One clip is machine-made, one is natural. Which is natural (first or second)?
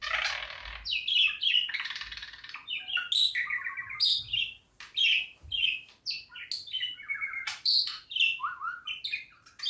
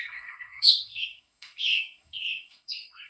first